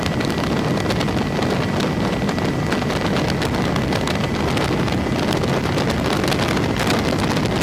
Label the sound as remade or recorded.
recorded